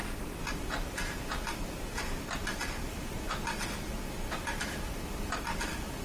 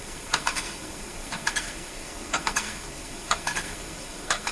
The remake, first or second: second